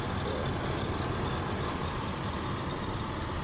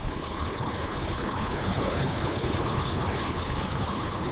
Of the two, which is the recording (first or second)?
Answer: first